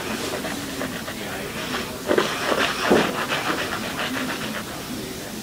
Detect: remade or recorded recorded